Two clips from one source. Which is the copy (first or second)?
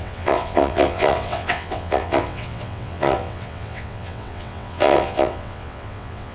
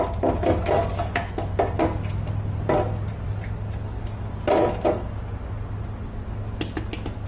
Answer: first